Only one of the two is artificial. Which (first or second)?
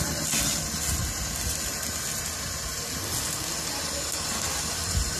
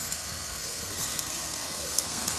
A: second